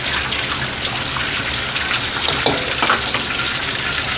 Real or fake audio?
real